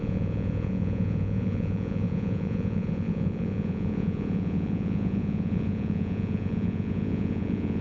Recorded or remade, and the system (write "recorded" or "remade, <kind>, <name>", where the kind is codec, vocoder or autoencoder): remade, vocoder, Vocos